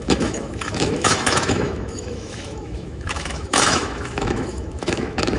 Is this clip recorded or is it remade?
remade